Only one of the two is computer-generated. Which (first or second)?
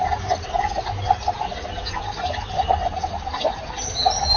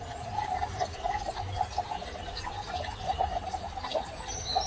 second